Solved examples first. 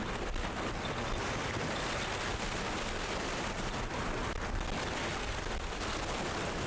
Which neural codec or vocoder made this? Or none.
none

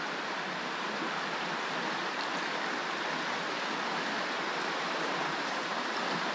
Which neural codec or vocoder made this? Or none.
none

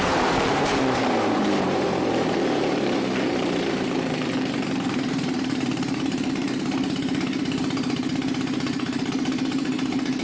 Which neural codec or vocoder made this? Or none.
vocoder, BigVGAN v2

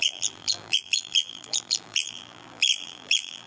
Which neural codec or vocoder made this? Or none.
vocoder, BigVGAN v2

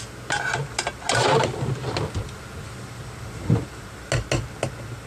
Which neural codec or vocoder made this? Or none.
none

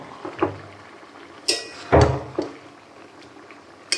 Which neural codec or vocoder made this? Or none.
none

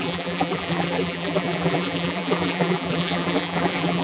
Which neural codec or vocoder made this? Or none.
vocoder, BigVGAN v2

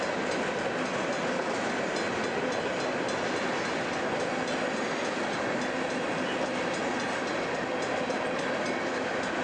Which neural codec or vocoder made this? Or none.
none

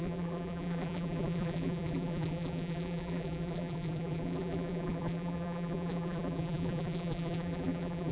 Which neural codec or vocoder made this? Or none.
vocoder, BigVGAN v2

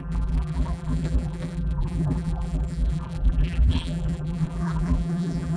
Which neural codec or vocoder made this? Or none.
vocoder, BigVGAN v2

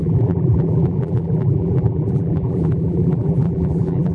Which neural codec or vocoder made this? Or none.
vocoder, BigVGAN v2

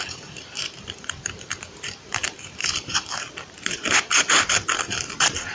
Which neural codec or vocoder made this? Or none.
vocoder, BigVGAN v2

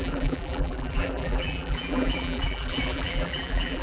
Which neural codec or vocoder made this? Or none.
vocoder, BigVGAN v2